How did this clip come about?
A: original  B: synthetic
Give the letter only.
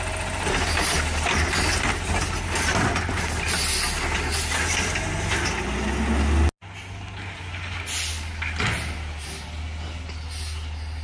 A